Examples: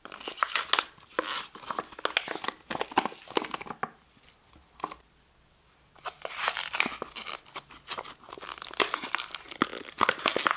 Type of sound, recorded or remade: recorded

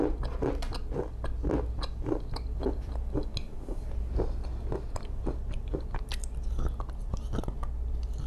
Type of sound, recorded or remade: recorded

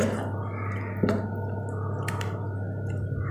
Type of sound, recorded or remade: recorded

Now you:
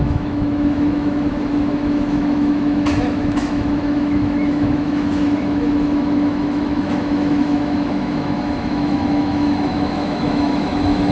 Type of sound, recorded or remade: remade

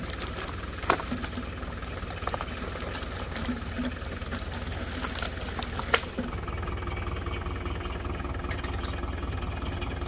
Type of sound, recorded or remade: recorded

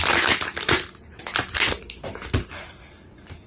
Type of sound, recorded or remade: recorded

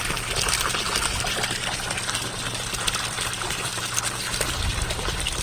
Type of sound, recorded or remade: recorded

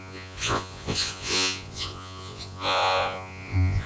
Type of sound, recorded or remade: remade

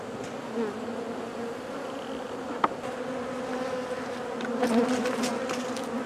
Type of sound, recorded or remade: recorded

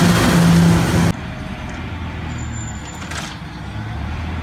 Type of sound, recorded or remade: recorded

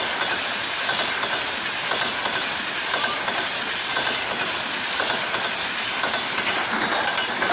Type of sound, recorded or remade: recorded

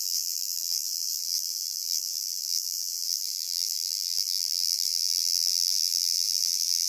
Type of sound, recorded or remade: remade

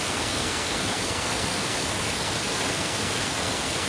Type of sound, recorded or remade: remade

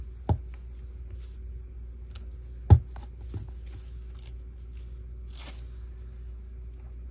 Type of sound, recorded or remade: recorded